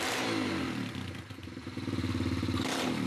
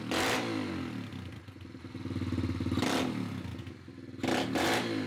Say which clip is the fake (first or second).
first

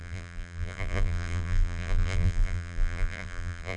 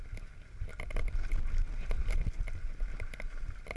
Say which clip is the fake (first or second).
first